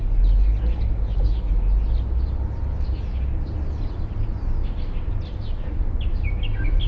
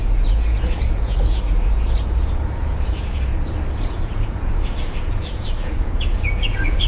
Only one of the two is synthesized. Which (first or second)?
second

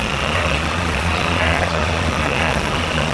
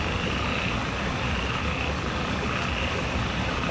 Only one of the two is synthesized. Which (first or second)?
first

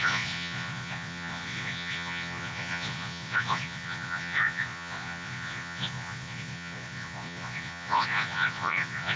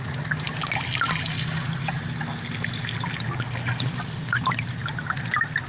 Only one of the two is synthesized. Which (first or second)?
first